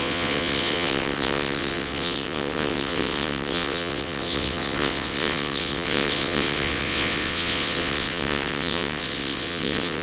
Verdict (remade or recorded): remade